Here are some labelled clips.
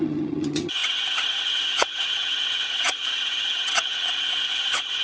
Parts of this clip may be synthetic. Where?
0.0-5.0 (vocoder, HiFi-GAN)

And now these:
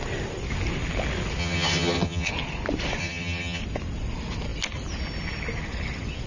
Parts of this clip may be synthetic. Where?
1.4-2.3 (vocoder, HiFi-GAN); 3.0-3.6

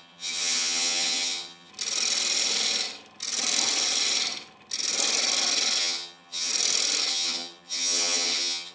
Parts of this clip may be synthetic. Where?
0.0-1.7 (vocoder, HiFi-GAN); 5.8-6.5; 7.1-8.7

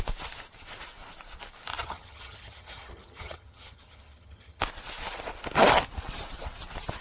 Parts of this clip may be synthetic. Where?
1.8-4.6 (vocoder, HiFi-GAN)

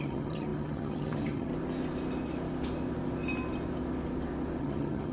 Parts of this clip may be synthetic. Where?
0.0-1.5 (vocoder, HiFi-GAN); 4.6-5.1

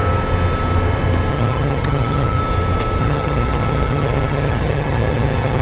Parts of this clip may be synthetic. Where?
1.3-2.4 (vocoder, HiFi-GAN); 3.0-5.6

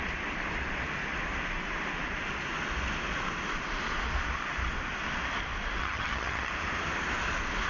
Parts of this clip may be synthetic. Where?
5.8-6.5 (vocoder, HiFi-GAN)

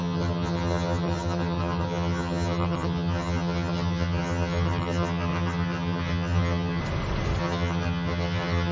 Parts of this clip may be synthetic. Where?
0.0-6.8 (vocoder, HiFi-GAN); 7.4-8.7